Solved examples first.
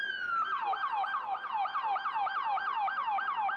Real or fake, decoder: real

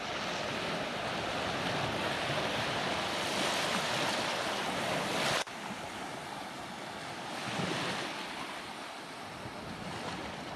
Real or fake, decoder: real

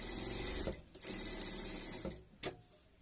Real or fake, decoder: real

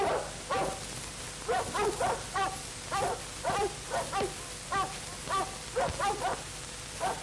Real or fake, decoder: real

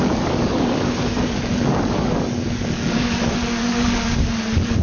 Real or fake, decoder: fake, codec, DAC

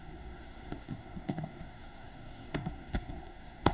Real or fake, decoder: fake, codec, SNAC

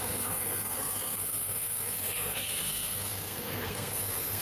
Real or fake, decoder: fake, codec, SNAC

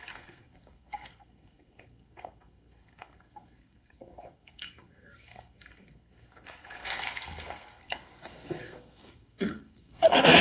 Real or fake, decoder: fake, codec, SNAC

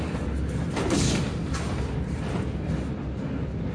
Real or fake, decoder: real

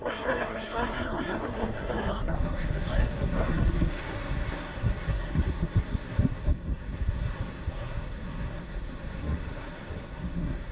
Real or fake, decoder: fake, codec, SNAC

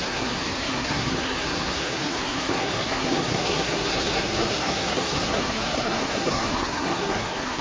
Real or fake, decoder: fake, codec, SNAC